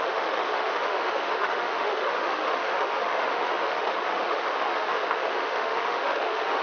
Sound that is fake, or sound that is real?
fake